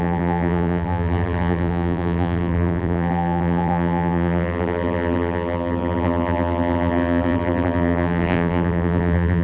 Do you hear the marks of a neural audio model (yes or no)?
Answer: yes